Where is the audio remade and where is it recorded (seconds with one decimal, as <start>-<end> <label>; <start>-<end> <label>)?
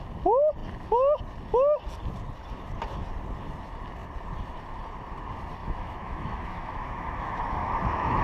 0.0-5.6 recorded; 5.6-8.2 remade